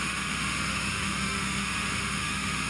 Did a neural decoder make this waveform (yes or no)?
yes